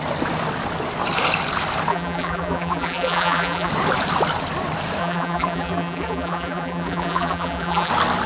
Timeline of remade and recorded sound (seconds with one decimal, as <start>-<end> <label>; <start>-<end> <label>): 0.0-1.9 recorded; 1.9-3.7 remade; 3.7-5.0 recorded; 5.0-7.9 remade; 7.9-8.3 recorded